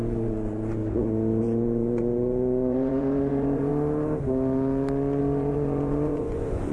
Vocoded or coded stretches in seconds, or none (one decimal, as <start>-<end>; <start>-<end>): 0.0-0.8; 1.4-3.7; 5.2-6.7